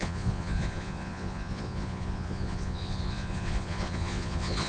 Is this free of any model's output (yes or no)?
no